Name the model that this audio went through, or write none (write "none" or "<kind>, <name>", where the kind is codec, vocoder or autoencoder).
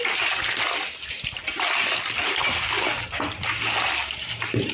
none